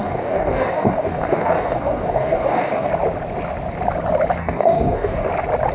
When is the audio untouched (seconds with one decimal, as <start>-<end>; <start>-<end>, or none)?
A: 2.9-4.4; 5.3-5.7